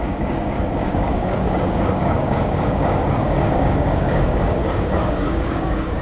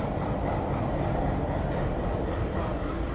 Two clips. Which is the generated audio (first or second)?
first